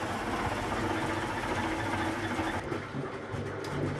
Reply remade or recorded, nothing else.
recorded